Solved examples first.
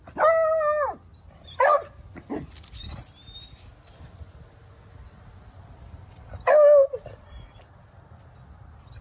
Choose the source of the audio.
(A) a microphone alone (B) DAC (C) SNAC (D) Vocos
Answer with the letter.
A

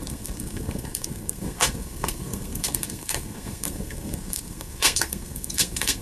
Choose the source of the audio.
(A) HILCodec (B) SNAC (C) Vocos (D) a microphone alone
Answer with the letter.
B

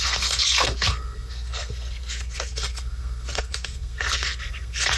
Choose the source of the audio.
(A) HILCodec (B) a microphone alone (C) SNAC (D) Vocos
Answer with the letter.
C